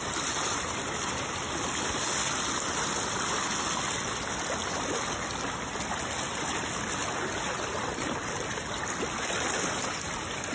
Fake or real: real